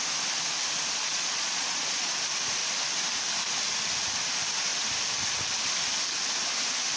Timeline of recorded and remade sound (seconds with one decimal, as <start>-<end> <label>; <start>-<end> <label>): 0.0-1.0 recorded; 1.0-2.1 remade; 2.1-7.0 recorded